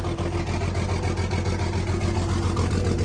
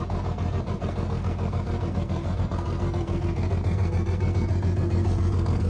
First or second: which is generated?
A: second